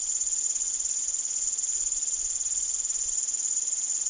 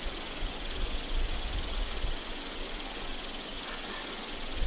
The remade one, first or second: second